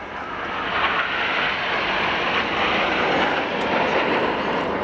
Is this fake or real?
real